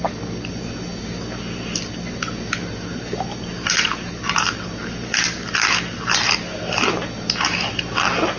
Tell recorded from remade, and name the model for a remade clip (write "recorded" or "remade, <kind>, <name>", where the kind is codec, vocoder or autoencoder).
recorded